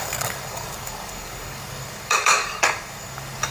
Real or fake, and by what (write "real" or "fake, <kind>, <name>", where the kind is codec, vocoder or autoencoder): fake, codec, DAC